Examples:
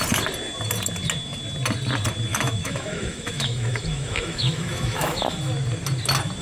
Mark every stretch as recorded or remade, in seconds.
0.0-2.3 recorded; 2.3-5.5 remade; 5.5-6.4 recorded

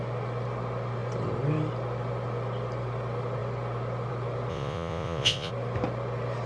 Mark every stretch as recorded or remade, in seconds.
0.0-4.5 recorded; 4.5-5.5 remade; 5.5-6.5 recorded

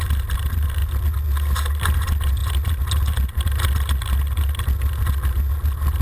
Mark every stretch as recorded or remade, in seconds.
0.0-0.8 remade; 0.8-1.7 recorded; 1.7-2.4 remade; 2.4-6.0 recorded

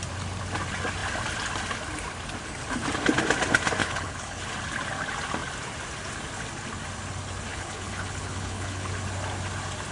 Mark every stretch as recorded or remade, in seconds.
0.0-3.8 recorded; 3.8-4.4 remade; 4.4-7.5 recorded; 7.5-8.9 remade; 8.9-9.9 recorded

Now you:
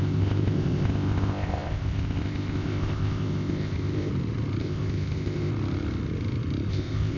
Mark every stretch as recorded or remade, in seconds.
0.0-4.1 remade; 4.1-4.6 recorded; 4.6-5.5 remade; 5.5-6.7 recorded; 6.7-7.2 remade

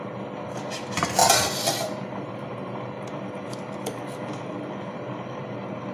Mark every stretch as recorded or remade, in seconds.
0.0-5.9 recorded

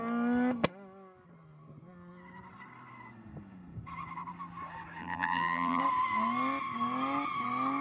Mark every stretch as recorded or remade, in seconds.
0.0-5.0 recorded; 5.0-5.8 remade; 5.8-7.8 recorded